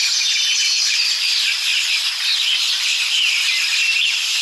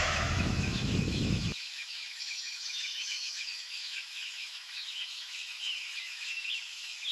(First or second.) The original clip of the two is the first